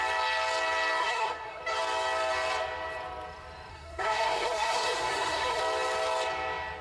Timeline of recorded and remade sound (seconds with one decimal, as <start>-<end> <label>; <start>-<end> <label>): 0.0-1.0 recorded; 1.0-1.6 remade; 1.6-3.7 recorded; 3.7-5.6 remade; 5.6-6.8 recorded